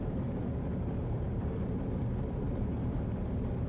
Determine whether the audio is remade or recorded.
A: remade